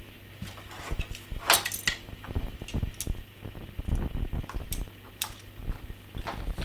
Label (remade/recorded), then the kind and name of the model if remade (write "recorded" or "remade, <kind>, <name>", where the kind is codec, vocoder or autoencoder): recorded